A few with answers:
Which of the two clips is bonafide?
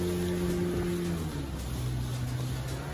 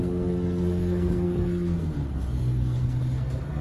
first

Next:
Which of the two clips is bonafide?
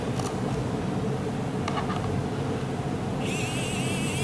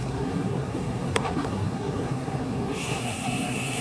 first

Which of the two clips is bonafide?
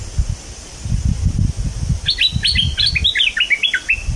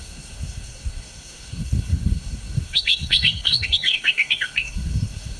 first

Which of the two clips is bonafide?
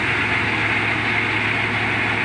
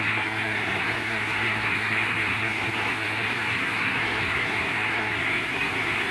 first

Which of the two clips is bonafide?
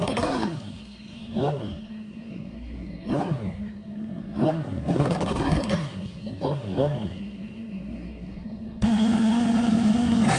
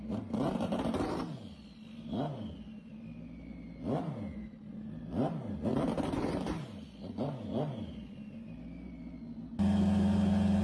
second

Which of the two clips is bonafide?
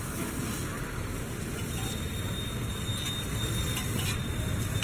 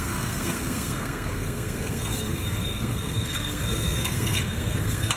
first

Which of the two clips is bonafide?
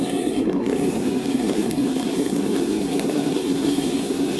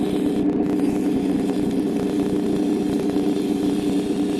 second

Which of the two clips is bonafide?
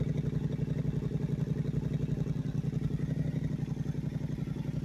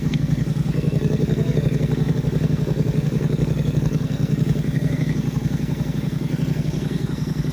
first